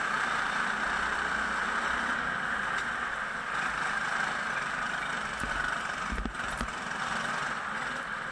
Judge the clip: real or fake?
real